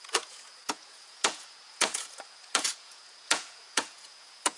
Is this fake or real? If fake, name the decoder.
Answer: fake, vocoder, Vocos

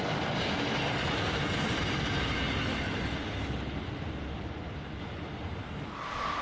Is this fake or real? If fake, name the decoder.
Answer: real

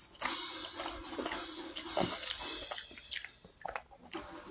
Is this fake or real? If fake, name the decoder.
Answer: real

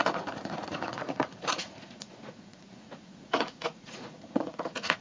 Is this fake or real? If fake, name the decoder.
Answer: fake, vocoder, Vocos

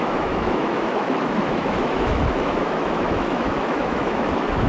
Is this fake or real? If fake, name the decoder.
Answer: fake, autoencoder, DAC-VAE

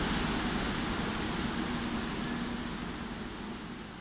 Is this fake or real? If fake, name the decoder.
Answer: real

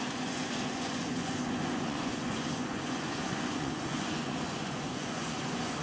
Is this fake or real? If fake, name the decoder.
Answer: fake, vocoder, Vocos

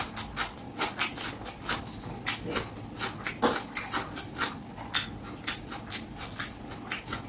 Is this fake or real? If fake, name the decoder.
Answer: real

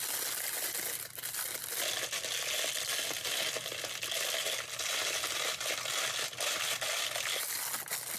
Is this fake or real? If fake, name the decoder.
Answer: real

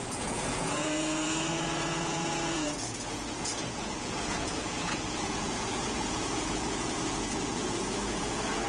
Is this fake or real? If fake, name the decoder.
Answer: fake, vocoder, Vocos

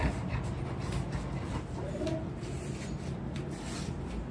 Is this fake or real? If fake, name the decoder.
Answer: real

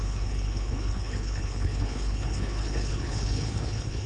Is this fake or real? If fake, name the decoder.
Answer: fake, codec, HILCodec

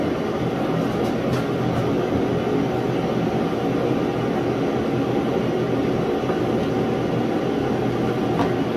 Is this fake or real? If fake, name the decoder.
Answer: real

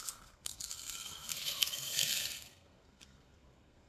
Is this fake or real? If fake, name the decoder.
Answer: fake, codec, SNAC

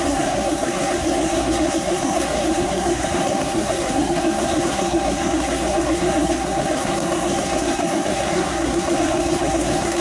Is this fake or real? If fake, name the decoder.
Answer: fake, codec, SNAC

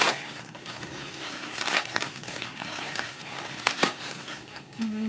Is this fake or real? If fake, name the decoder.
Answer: fake, codec, SNAC